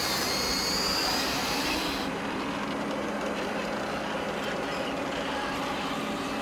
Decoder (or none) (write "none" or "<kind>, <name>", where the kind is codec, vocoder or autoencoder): none